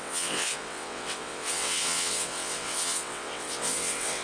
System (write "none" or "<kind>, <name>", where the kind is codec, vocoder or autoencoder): vocoder, WaveNeXt